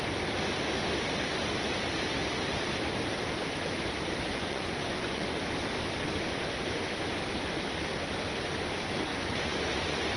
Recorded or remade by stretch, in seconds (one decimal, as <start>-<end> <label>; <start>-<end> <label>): 0.0-4.3 recorded; 4.3-5.4 remade; 5.4-9.1 recorded; 9.1-10.2 remade